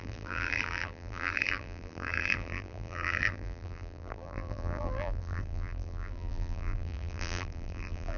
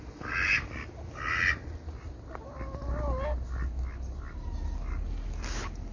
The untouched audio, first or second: second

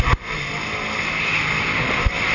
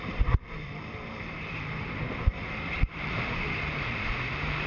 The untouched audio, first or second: first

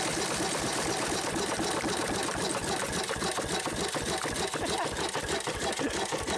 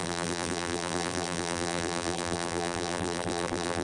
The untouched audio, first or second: first